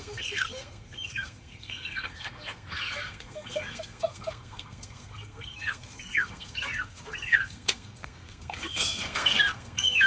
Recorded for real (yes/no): no